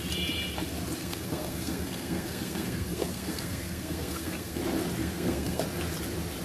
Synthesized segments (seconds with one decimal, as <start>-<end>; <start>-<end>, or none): 1.0-4.6; 5.0-5.6